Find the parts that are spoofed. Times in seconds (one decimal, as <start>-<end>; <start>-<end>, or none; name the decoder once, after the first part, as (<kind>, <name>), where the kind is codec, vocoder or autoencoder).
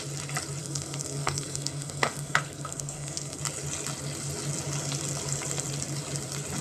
0.6-3.4 (codec, SNAC)